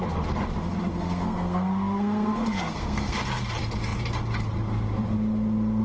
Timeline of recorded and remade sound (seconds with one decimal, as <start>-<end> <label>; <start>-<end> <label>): 0.0-0.9 recorded; 0.9-3.2 remade; 3.2-5.8 recorded